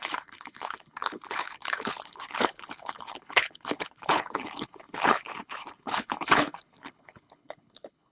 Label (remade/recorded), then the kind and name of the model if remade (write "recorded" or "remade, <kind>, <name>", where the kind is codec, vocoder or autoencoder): remade, codec, HILCodec